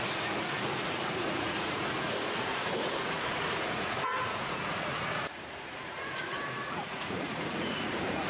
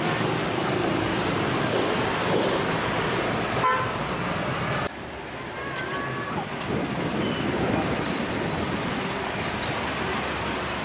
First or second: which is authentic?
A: second